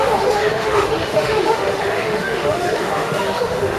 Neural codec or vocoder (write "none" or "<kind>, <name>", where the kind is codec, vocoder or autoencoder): autoencoder, DAC-VAE